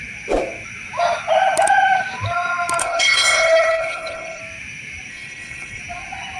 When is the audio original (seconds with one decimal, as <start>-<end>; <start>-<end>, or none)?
0.0-2.8; 4.4-5.1; 5.8-6.4